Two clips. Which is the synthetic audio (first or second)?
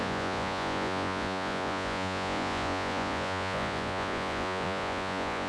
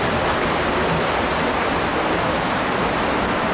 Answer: first